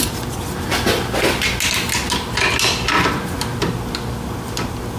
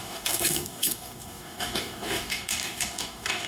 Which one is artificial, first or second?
second